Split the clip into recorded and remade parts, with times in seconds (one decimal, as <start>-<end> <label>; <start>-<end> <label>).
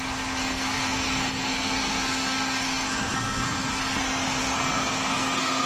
0.0-0.4 recorded; 0.4-3.8 remade; 3.8-4.4 recorded; 4.4-5.7 remade